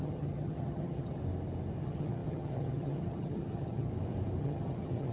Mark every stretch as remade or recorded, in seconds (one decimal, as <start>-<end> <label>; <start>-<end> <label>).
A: 0.0-1.2 remade; 1.2-1.8 recorded; 1.8-3.9 remade; 3.9-4.4 recorded; 4.4-5.1 remade